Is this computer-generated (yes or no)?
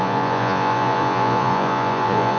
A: yes